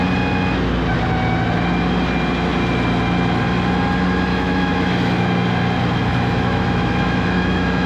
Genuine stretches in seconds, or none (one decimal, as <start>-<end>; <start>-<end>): 0.0-4.3; 5.2-6.1